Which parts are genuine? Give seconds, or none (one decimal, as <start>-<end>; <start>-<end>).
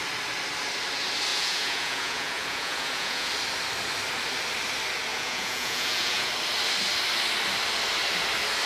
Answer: 0.0-1.3; 3.3-5.1; 6.3-8.7